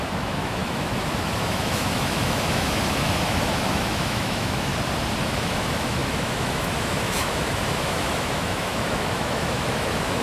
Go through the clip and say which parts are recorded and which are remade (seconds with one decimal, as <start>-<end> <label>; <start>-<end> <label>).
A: 0.0-4.7 remade; 4.7-5.2 recorded; 5.2-10.2 remade